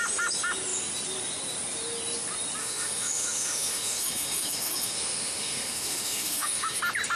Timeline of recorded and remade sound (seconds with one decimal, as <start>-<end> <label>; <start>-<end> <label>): 0.0-2.6 recorded; 2.6-6.8 remade; 6.8-7.2 recorded